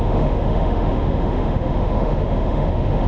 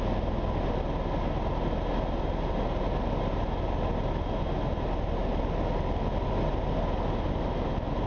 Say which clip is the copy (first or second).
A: first